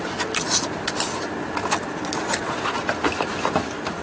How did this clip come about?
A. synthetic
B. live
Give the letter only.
A